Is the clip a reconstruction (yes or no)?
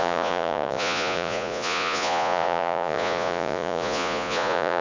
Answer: yes